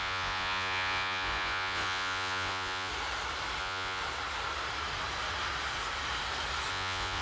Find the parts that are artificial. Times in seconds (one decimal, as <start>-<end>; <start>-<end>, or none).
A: 0.0-2.9; 3.6-4.0; 6.7-7.2